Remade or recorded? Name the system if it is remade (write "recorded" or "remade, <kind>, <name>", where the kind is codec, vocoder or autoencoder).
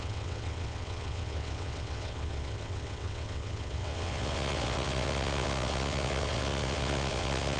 remade, vocoder, WaveNeXt